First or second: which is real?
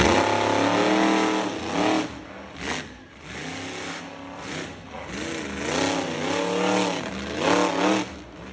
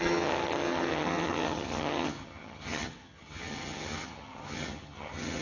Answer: first